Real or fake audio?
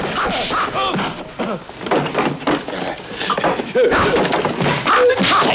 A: real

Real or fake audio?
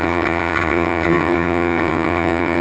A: fake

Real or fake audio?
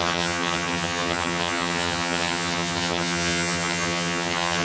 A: fake